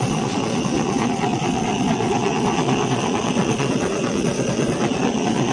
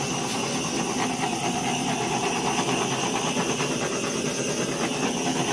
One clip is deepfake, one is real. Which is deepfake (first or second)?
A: first